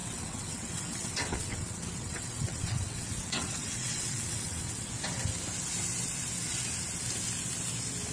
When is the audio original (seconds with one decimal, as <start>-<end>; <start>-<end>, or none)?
4.9-8.1